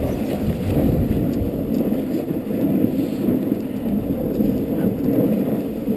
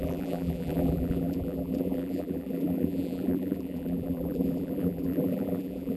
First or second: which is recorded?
first